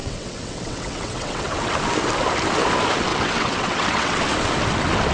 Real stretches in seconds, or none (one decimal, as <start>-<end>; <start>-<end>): 1.7-3.1; 4.2-5.1

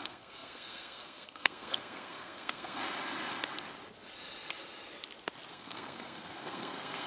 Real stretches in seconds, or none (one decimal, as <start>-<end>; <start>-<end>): 2.8-5.5

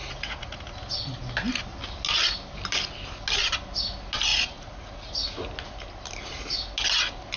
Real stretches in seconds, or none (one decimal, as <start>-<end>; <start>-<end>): 0.6-4.3; 5.1-7.4

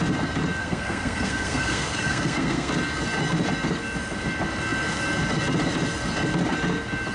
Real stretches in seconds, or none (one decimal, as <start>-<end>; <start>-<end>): 0.0-0.6; 2.7-7.1

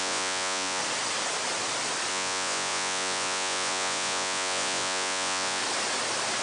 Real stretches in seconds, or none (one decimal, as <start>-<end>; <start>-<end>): 0.8-2.1; 5.6-6.4

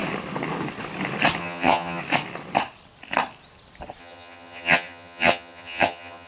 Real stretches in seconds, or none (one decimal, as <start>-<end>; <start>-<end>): 0.0-1.4; 2.0-4.0

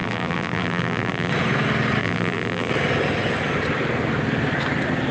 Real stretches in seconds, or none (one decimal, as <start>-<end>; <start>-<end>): 1.3-2.0; 2.7-5.1

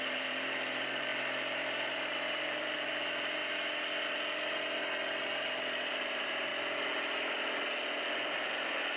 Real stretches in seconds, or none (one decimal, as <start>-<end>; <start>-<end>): 3.4-5.9; 6.5-8.3